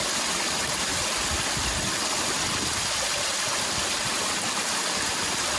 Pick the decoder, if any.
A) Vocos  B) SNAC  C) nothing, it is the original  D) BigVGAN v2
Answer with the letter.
C